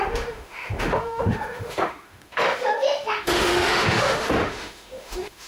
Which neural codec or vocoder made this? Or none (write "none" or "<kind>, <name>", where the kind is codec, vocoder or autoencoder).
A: autoencoder, DAC-VAE